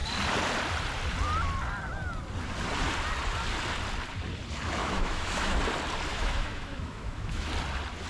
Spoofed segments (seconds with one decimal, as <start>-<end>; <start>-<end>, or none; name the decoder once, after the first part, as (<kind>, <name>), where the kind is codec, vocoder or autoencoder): 4.8-5.6 (autoencoder, DAC-VAE); 6.1-7.5